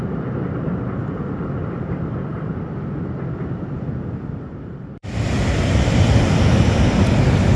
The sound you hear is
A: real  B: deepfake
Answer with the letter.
B